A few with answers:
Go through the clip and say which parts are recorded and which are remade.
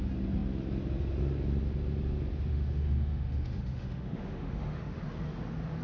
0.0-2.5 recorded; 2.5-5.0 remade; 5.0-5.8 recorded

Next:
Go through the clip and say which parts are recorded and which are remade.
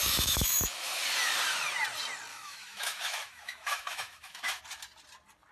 0.0-1.0 remade; 1.0-2.3 recorded; 2.3-4.6 remade; 4.6-5.5 recorded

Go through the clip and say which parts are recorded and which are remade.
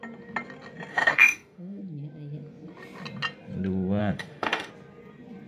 0.0-0.9 recorded; 0.9-1.8 remade; 1.8-4.0 recorded; 4.0-4.7 remade; 4.7-5.5 recorded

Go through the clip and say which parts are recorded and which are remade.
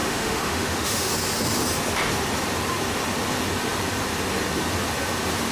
0.0-1.1 remade; 1.1-5.5 recorded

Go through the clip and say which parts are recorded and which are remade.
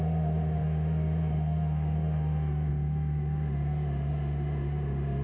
0.0-5.2 remade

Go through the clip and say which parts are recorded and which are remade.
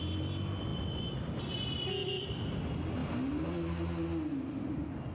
0.0-5.1 recorded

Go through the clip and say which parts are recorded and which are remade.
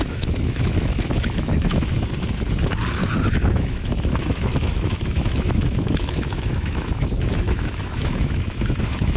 0.0-1.9 remade; 1.9-3.3 recorded; 3.3-9.2 remade